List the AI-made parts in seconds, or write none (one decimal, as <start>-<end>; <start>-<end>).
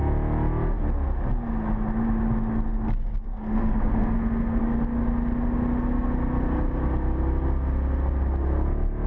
3.3-4.6